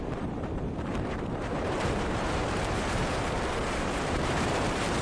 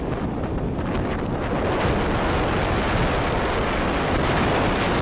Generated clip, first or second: first